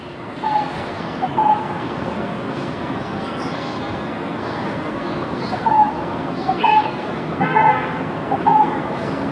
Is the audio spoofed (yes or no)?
yes